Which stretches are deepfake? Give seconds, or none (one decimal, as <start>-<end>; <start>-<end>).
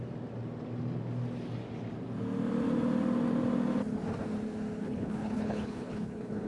4.8-6.5